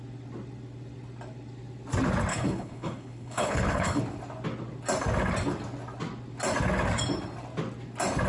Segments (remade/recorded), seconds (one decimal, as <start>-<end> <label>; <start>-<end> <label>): 0.0-2.3 recorded; 2.3-4.0 remade; 4.0-8.3 recorded